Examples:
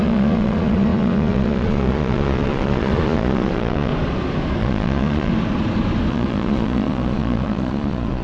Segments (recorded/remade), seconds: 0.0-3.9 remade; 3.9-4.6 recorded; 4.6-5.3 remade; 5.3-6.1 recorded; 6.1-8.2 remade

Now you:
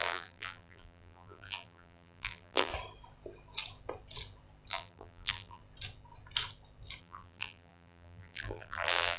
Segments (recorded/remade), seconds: 0.0-2.7 remade; 2.7-4.7 recorded; 4.7-5.6 remade; 5.6-7.0 recorded; 7.0-9.2 remade